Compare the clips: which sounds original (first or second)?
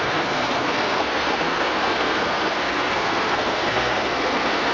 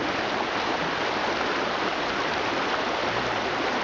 second